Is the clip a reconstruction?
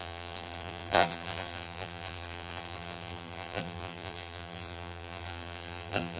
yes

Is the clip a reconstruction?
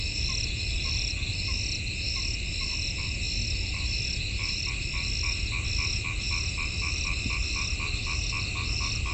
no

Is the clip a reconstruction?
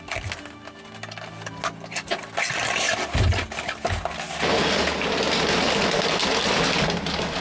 no